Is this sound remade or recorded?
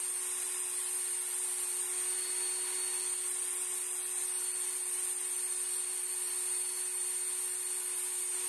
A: recorded